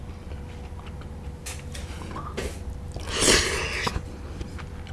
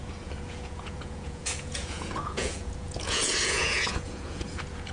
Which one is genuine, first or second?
first